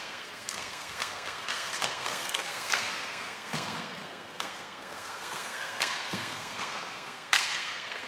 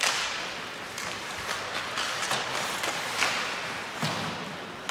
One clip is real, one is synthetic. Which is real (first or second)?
second